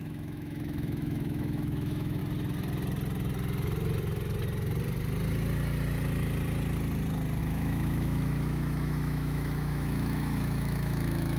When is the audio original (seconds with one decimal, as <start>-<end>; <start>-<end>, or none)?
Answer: 2.2-7.4